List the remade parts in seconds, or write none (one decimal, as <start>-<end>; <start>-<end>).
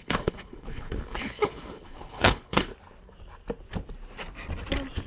0.0-2.7